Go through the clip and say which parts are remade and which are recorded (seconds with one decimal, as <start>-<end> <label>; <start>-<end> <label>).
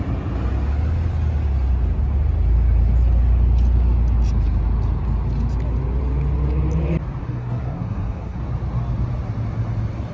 0.0-7.2 recorded; 7.2-8.4 remade; 8.4-10.1 recorded